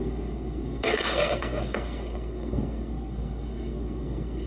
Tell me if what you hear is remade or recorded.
remade